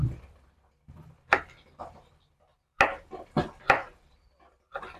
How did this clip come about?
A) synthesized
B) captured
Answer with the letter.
B